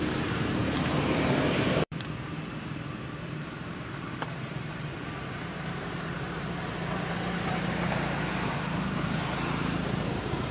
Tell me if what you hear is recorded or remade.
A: remade